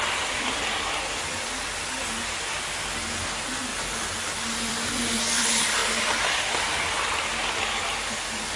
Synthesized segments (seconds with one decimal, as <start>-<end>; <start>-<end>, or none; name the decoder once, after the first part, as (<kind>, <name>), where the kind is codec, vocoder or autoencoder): none